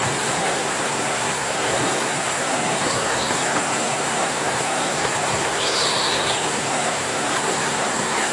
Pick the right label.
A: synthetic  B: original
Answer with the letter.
A